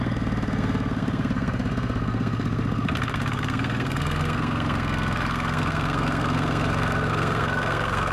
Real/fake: fake